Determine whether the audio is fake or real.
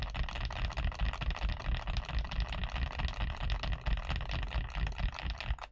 real